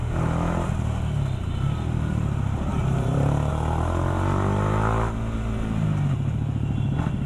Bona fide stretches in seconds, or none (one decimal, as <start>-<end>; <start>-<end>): 0.0-2.7; 3.5-7.3